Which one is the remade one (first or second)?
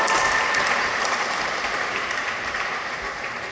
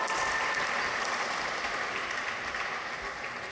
first